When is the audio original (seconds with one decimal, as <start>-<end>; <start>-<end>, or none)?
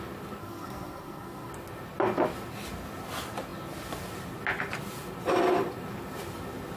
0.0-0.4; 1.5-6.8